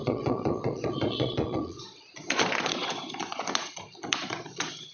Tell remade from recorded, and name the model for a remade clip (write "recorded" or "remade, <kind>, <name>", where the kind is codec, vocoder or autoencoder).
remade, vocoder, Vocos